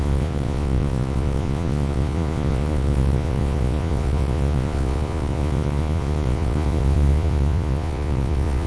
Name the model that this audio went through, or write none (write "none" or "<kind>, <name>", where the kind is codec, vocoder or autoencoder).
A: vocoder, Vocos